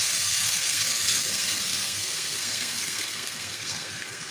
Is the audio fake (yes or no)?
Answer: yes